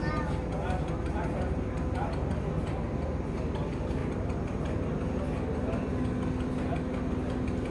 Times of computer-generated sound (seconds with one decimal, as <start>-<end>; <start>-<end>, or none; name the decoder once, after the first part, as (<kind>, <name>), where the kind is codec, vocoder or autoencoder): none